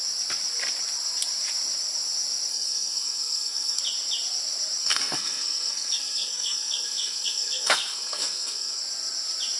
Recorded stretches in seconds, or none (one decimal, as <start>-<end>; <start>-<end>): 0.0-2.5; 3.8-4.8; 8.8-9.6